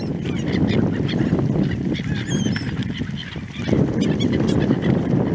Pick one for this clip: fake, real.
real